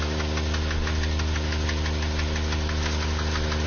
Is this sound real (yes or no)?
yes